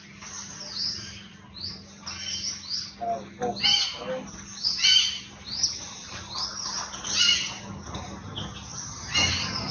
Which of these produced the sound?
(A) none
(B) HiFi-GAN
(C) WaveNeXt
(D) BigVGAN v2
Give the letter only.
A